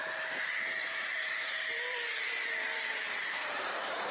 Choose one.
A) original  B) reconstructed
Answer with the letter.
B